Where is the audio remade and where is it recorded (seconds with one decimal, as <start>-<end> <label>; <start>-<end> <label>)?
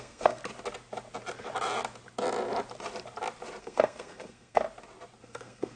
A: 0.0-0.4 remade; 0.4-3.6 recorded; 3.6-4.6 remade; 4.6-5.2 recorded; 5.2-5.8 remade